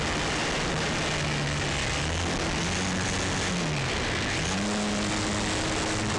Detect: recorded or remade recorded